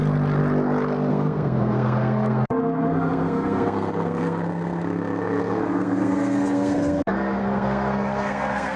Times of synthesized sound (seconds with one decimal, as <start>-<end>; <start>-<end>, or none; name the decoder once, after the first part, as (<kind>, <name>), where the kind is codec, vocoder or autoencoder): 1.1-8.8 (codec, SNAC)